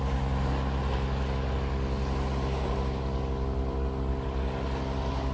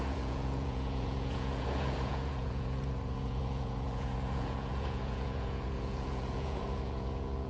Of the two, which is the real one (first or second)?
first